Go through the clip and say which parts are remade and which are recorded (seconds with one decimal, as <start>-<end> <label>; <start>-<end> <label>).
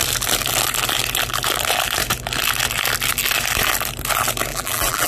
0.0-4.5 recorded; 4.5-5.1 remade